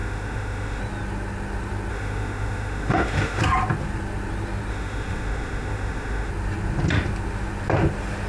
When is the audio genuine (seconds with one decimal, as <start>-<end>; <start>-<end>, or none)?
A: 0.8-1.9; 3.4-4.7; 6.3-8.3